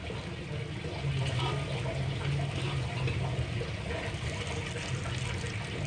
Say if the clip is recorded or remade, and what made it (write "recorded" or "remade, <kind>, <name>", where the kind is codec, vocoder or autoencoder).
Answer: recorded